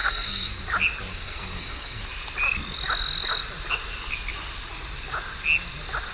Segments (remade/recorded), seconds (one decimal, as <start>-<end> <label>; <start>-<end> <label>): 0.0-0.6 remade; 0.6-1.1 recorded; 1.1-2.0 remade; 2.0-6.1 recorded